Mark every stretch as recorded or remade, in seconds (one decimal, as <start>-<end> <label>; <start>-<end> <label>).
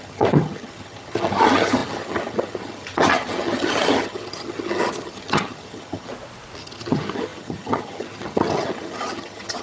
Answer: 0.0-6.1 remade; 6.1-6.6 recorded; 6.6-9.6 remade